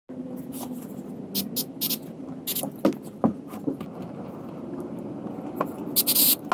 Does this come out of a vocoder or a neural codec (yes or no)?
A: no